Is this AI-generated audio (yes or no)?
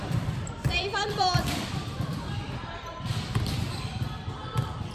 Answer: yes